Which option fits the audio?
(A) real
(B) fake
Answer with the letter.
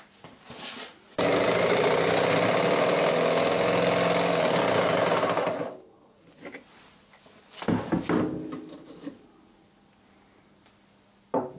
A